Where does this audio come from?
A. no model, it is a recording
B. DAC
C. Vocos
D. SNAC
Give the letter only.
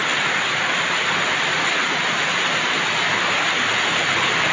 A